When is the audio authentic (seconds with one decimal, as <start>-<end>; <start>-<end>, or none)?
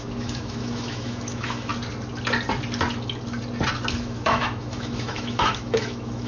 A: 1.7-3.9